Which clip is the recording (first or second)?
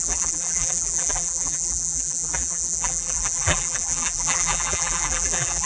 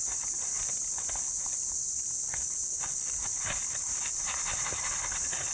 second